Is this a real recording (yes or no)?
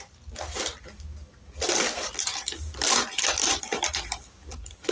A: yes